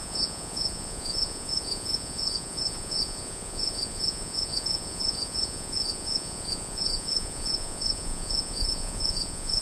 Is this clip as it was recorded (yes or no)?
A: no